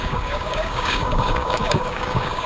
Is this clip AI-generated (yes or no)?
yes